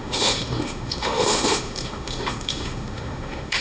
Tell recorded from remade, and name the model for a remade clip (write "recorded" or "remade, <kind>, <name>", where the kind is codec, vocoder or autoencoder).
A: remade, autoencoder, DAC-VAE